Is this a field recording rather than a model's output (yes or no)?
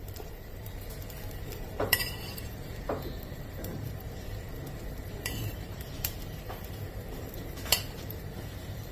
no